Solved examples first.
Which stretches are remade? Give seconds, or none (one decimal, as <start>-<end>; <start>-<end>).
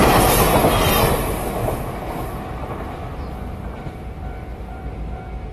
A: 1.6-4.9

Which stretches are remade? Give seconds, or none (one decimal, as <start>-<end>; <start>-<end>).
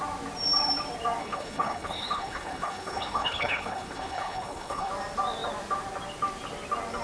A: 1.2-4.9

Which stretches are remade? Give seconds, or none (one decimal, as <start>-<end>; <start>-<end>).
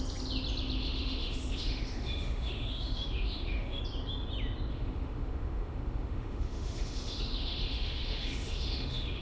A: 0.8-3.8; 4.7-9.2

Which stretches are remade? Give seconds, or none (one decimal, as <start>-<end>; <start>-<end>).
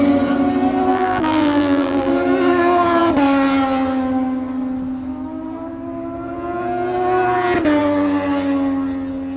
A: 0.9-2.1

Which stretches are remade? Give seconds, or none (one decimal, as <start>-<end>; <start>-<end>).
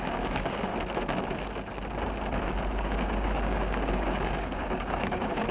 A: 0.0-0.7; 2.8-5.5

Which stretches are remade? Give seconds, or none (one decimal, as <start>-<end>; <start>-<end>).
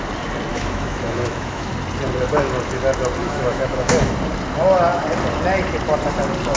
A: 0.5-1.7; 3.2-3.9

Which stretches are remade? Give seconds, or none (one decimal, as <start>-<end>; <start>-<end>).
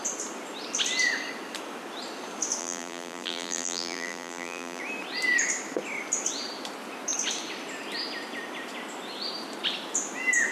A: 2.6-4.8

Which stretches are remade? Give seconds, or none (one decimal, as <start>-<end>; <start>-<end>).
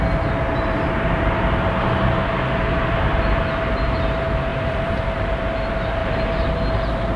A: 4.5-5.0; 6.0-6.5